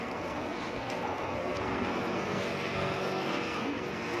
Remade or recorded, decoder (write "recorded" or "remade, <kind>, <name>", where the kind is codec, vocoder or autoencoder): remade, codec, SNAC